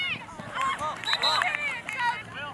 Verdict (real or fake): real